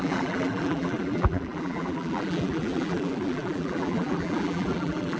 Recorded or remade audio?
remade